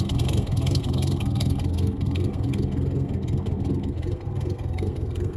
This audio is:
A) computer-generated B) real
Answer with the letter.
A